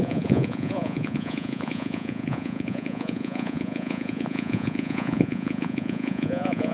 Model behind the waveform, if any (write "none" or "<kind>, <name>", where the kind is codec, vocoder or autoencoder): vocoder, Vocos